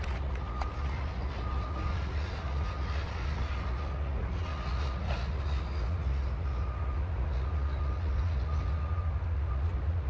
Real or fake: fake